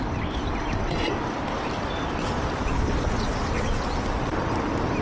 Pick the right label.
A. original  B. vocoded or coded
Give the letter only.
A